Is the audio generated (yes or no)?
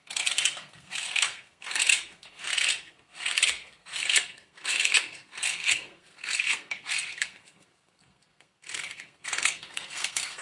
yes